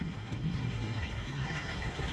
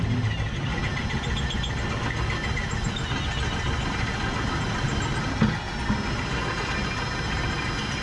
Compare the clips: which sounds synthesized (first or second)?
first